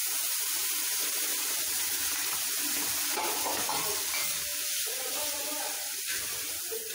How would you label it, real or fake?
fake